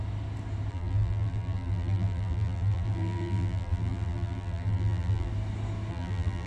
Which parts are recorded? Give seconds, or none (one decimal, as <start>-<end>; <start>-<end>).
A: 0.0-0.7; 5.3-5.9